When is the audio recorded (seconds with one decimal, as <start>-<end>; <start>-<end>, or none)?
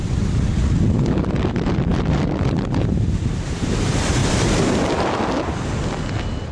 0.0-1.9; 3.6-4.2; 4.8-6.5